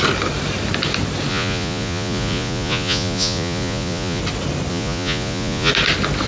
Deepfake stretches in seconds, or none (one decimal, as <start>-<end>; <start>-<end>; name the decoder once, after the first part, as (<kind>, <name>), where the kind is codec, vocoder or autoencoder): 1.3-4.2 (vocoder, Vocos); 4.7-5.7